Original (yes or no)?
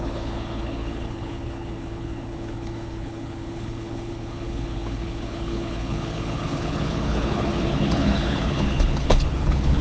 no